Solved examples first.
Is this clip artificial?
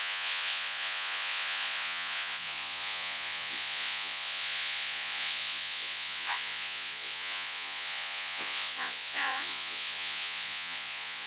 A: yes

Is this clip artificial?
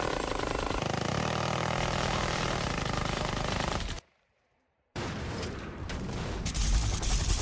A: yes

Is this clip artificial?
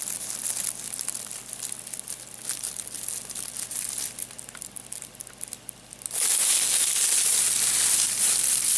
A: no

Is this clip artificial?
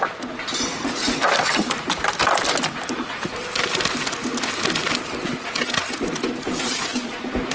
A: no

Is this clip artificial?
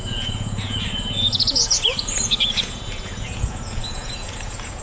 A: yes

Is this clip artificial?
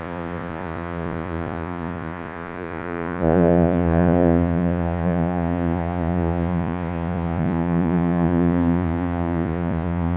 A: yes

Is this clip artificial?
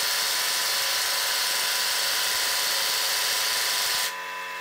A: no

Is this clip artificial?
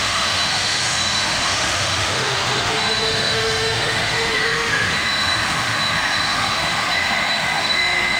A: yes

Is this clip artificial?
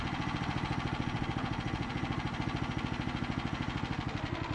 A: no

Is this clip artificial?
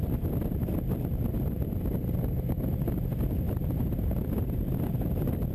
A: no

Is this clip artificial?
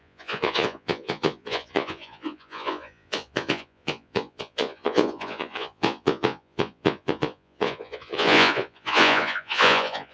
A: yes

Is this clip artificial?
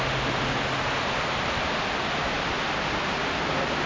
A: no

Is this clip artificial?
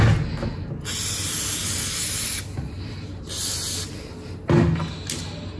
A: no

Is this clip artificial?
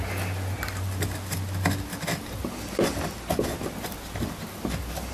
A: no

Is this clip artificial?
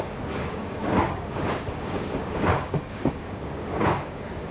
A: yes